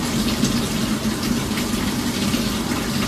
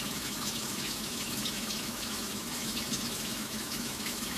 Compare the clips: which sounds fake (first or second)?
second